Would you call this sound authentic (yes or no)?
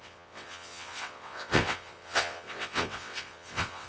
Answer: no